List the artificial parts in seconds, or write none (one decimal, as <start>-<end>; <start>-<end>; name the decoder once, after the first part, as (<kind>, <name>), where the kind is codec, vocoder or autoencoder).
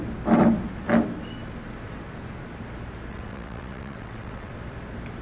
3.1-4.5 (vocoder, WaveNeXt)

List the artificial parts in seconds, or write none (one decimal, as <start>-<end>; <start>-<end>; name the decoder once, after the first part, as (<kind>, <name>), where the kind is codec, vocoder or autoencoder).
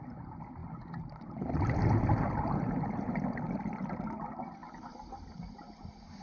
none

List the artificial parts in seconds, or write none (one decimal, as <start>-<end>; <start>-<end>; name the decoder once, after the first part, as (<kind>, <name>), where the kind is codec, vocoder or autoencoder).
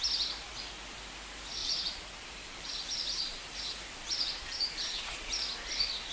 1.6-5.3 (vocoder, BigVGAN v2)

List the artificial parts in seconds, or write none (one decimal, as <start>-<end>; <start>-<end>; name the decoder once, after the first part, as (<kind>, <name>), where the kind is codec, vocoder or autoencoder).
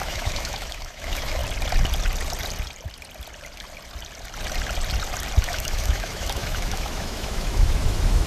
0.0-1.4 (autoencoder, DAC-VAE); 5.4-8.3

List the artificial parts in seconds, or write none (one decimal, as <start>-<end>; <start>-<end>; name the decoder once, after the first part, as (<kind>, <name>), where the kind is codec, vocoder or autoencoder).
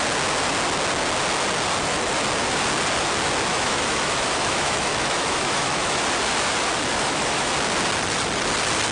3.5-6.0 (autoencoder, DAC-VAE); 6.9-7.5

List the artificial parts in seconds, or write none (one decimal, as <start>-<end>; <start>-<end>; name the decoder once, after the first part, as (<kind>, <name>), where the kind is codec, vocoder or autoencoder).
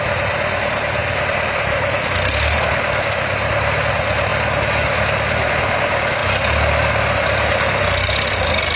none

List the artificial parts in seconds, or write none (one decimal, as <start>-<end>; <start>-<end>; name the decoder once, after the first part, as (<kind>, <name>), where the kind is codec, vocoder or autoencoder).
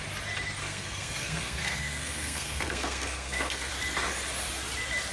0.6-3.7 (codec, SNAC)